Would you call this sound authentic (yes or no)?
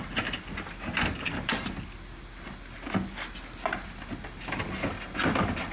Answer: yes